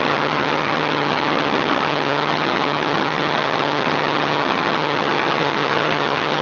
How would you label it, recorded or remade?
remade